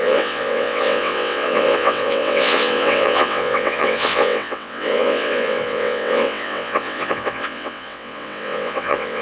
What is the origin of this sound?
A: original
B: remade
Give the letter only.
B